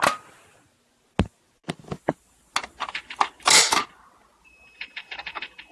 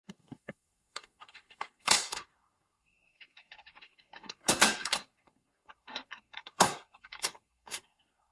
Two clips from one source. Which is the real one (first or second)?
first